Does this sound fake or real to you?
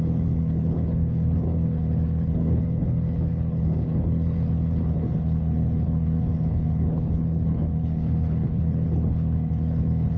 fake